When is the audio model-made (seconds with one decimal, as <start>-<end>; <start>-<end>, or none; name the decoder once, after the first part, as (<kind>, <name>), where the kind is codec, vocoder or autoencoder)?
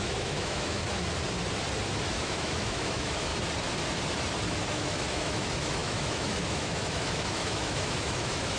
0.0-0.8 (autoencoder, DAC-VAE); 2.1-3.3; 4.7-8.6